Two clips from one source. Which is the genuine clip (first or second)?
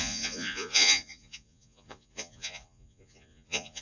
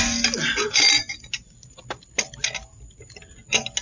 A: second